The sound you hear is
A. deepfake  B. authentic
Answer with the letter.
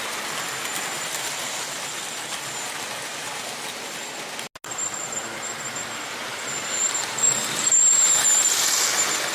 B